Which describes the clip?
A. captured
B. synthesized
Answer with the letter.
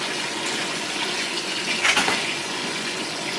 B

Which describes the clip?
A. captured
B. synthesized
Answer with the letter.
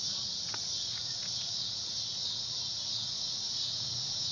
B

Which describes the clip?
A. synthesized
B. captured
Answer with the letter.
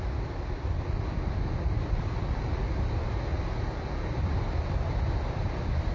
B